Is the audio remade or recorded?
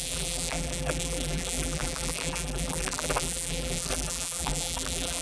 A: remade